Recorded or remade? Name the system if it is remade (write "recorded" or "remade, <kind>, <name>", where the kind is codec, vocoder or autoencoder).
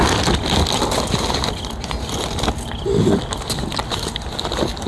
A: recorded